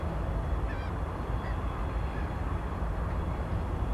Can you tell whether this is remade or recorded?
recorded